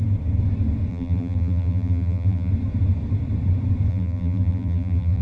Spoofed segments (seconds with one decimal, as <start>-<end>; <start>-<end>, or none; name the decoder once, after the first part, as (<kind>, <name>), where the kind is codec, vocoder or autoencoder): 0.9-2.5 (vocoder, BigVGAN v2); 3.9-5.2